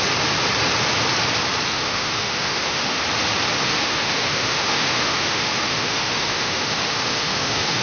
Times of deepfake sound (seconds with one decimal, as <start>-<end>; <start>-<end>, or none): 1.7-3.0; 3.7-7.8